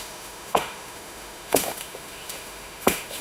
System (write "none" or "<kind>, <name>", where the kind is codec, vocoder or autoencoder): autoencoder, DAC-VAE